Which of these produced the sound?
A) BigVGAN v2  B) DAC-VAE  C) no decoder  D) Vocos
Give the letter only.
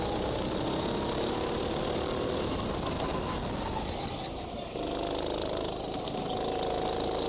C